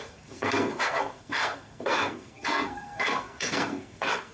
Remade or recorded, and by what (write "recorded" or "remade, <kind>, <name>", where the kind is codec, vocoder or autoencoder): remade, codec, SNAC